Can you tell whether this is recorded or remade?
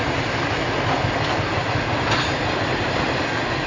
recorded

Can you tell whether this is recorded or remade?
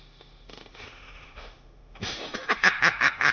remade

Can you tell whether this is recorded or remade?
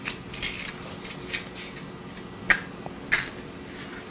recorded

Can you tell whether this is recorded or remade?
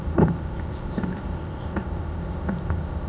remade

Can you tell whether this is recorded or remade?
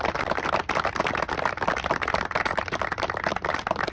recorded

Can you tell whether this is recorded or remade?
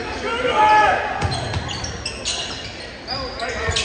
recorded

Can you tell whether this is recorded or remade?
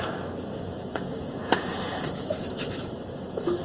remade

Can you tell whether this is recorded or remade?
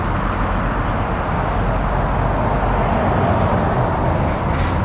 recorded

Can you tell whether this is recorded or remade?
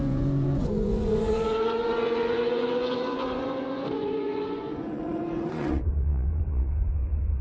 remade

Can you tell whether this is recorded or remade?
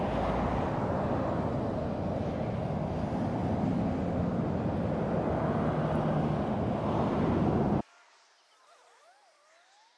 recorded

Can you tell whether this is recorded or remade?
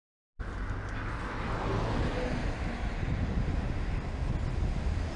recorded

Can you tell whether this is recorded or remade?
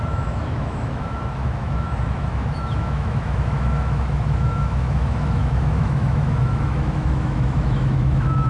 remade